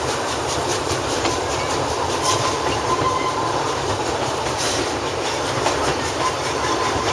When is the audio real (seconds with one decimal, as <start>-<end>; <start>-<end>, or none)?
none